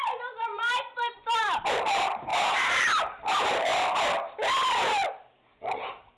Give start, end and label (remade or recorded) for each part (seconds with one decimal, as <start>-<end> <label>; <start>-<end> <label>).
0.0-3.7 remade; 3.7-5.1 recorded; 5.1-6.2 remade